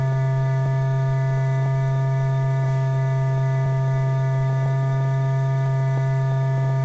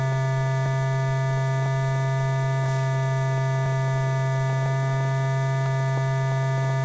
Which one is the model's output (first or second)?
first